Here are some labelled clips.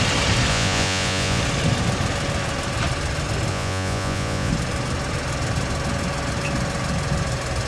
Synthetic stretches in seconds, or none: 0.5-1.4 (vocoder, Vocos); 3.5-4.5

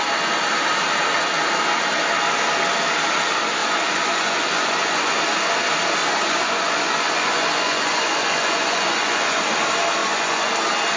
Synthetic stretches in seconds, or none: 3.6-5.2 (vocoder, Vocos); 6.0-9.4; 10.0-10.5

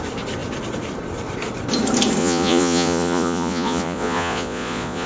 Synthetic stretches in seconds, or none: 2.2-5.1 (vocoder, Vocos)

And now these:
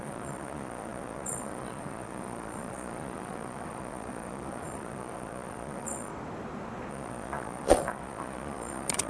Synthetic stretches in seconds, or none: 0.0-6.1 (vocoder, Vocos); 6.9-9.1

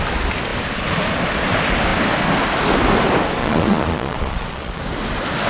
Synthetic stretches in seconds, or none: 3.4-4.8 (vocoder, Vocos)

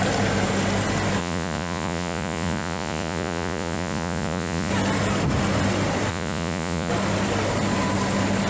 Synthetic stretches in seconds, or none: 1.2-4.7 (vocoder, Vocos); 6.1-6.9

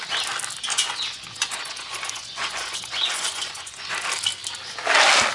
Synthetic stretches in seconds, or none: 0.7-3.9 (vocoder, Vocos)

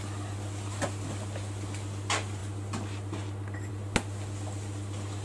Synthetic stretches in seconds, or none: none